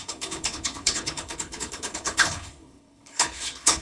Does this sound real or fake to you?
fake